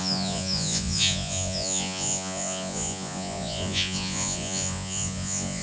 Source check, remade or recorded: remade